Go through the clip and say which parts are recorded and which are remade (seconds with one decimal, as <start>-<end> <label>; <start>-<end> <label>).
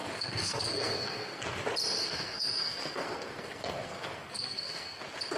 0.0-1.4 remade; 1.4-2.0 recorded; 2.0-5.0 remade; 5.0-5.4 recorded